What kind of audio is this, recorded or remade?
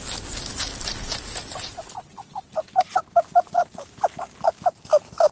recorded